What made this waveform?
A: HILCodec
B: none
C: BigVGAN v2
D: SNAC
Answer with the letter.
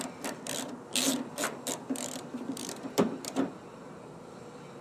C